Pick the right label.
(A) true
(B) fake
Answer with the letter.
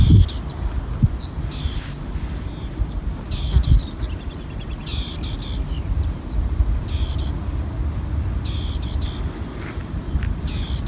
A